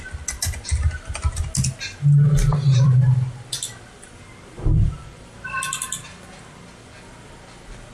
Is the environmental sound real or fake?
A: real